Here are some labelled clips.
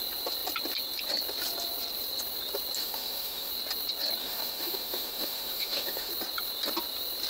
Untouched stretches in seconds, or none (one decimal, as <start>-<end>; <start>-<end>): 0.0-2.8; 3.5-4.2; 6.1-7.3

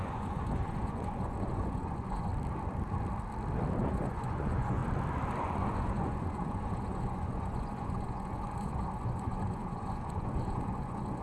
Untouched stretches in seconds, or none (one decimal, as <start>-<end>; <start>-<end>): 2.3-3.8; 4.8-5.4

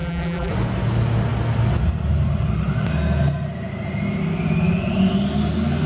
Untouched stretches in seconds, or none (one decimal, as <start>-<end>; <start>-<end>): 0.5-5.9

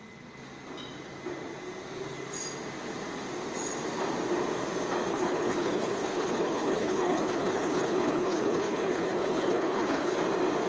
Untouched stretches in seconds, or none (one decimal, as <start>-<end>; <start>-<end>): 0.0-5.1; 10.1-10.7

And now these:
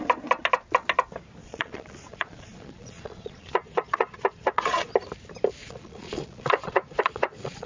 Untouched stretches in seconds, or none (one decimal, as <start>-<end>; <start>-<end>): 0.0-1.4; 4.9-5.6